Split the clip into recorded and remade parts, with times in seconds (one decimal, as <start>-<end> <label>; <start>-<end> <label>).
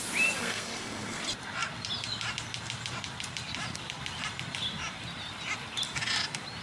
0.0-0.4 recorded; 0.4-1.2 remade; 1.2-6.6 recorded